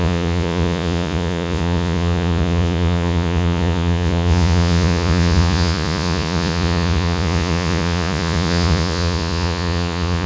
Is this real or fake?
fake